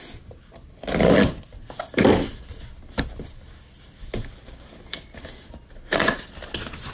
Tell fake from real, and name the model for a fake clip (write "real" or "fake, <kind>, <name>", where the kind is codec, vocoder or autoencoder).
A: real